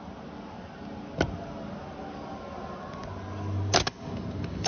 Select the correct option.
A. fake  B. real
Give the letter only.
B